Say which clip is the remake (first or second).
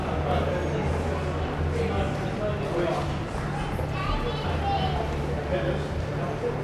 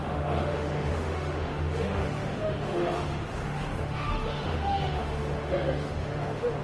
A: second